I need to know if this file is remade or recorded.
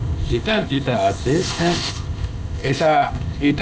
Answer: remade